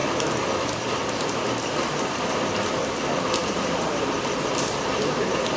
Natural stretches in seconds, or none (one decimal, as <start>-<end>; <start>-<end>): 0.0-5.6